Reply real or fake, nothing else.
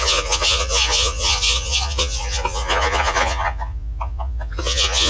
fake